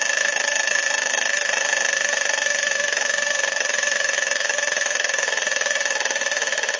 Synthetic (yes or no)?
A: yes